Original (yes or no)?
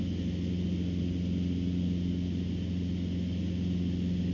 yes